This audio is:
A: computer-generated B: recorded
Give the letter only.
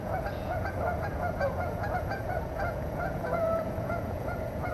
A